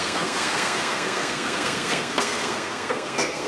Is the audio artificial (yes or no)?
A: yes